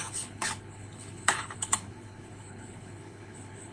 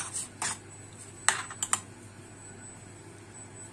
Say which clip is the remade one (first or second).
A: first